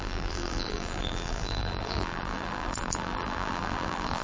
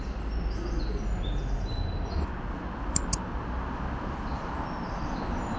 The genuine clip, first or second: second